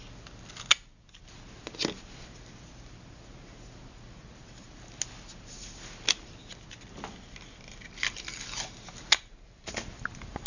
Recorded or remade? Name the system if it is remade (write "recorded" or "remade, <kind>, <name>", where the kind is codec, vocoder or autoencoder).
recorded